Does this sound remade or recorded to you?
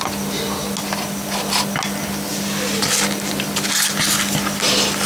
recorded